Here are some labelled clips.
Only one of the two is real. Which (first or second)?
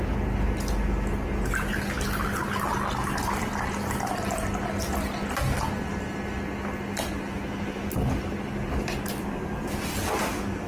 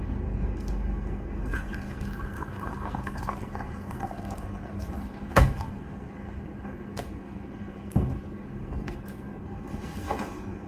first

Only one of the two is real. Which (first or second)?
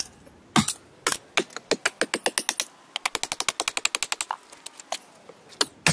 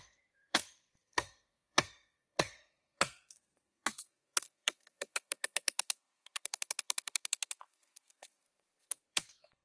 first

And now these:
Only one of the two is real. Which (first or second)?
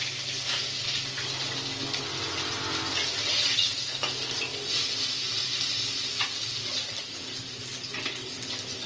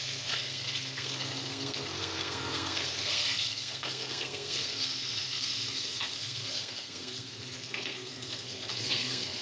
first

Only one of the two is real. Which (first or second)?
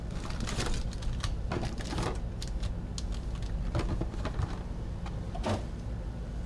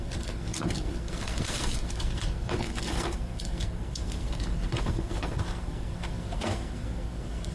first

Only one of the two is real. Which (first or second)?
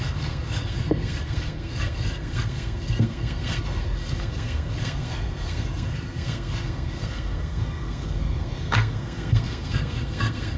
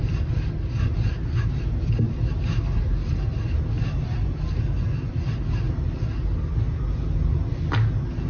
second